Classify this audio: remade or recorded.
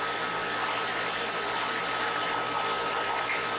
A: recorded